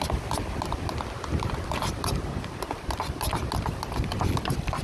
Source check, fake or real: real